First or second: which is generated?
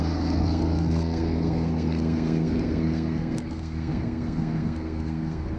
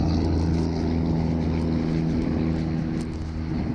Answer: first